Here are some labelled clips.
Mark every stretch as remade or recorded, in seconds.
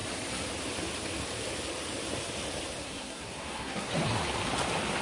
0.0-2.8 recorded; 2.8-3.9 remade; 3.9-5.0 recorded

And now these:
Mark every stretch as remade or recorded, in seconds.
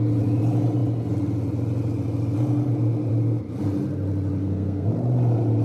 0.0-4.4 recorded; 4.4-4.9 remade; 4.9-5.6 recorded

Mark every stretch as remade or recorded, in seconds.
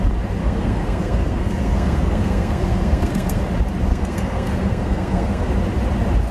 0.0-0.4 recorded; 0.4-3.4 remade; 3.4-3.9 recorded; 3.9-5.5 remade; 5.5-6.3 recorded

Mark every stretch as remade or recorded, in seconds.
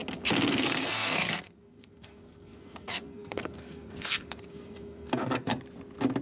0.0-0.5 recorded; 0.5-5.5 remade; 5.5-6.2 recorded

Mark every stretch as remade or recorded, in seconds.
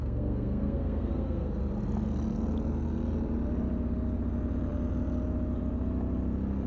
0.0-1.6 remade; 1.6-6.7 recorded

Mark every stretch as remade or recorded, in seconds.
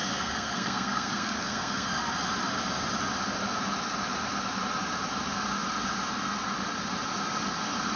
0.0-2.0 remade; 2.0-8.0 recorded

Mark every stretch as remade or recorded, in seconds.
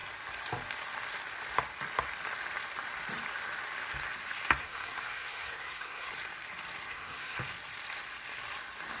0.0-4.6 recorded; 4.6-6.1 remade; 6.1-6.9 recorded; 6.9-7.4 remade; 7.4-9.0 recorded